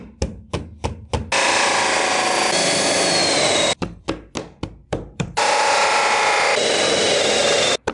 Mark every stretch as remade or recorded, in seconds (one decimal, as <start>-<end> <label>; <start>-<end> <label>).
0.0-4.8 recorded; 4.8-6.0 remade; 6.0-7.9 recorded

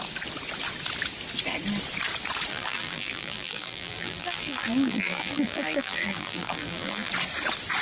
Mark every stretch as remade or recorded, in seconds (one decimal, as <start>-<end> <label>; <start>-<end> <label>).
0.0-2.5 recorded; 2.5-7.1 remade; 7.1-7.8 recorded

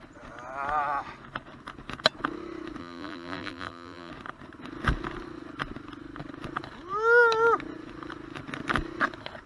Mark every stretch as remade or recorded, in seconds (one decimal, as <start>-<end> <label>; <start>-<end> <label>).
0.0-2.8 recorded; 2.8-4.1 remade; 4.1-9.5 recorded